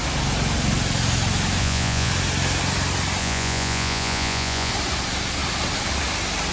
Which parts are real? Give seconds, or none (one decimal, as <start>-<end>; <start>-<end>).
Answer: 0.0-1.6; 2.1-3.2; 4.7-6.5